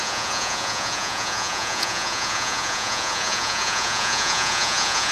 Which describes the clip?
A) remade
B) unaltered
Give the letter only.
A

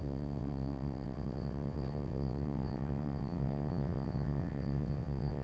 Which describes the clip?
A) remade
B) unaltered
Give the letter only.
A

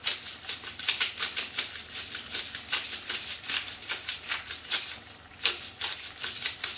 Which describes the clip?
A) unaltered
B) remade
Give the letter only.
B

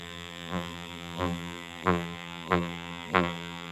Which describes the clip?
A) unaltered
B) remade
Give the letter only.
B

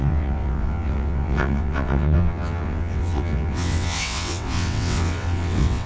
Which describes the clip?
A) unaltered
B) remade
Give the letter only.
B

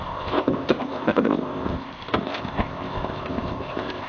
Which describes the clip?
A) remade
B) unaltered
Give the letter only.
A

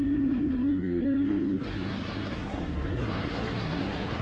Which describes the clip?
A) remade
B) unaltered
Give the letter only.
A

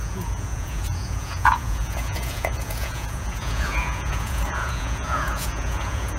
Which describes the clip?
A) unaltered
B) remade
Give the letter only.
B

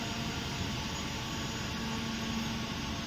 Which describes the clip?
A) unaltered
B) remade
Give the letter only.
A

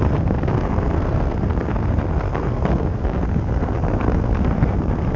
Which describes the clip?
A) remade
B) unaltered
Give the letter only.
A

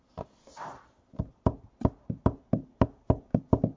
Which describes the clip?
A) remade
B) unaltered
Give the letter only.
B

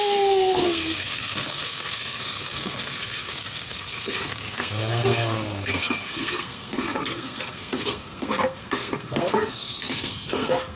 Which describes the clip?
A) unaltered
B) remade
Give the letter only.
B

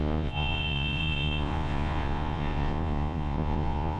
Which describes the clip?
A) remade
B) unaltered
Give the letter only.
A